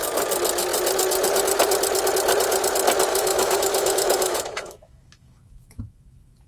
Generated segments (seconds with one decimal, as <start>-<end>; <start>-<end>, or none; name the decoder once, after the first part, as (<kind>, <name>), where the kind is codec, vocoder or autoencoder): 3.1-6.5 (autoencoder, DAC-VAE)